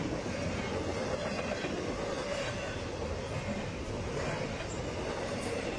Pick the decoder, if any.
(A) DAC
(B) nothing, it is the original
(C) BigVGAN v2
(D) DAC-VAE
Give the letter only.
B